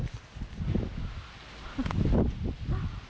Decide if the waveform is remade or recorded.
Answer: recorded